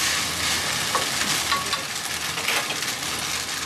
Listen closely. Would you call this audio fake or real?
real